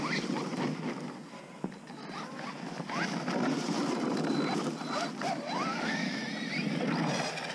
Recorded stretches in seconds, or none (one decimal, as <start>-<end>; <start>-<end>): 0.0-5.7; 6.2-7.5